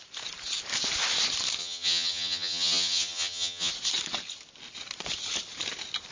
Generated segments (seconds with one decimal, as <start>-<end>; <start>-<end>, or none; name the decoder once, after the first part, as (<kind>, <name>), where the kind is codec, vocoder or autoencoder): 1.6-3.7 (vocoder, HiFi-GAN)